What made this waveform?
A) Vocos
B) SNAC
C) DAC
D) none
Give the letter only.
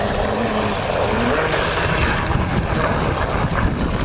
D